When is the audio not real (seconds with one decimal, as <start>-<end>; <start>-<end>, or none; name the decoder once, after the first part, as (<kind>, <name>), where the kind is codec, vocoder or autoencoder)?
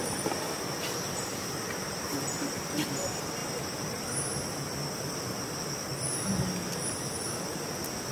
none